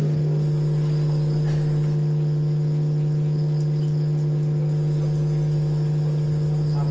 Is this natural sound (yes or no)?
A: yes